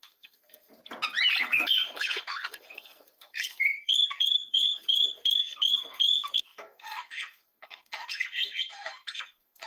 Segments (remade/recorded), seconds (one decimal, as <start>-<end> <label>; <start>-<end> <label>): 0.0-0.8 remade; 0.8-1.4 recorded; 1.4-9.7 remade